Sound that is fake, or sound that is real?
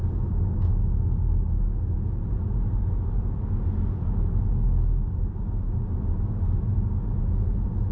real